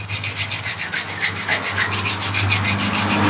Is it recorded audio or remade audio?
recorded